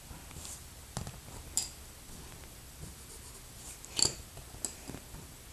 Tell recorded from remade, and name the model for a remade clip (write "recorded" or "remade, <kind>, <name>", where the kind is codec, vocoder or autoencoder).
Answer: recorded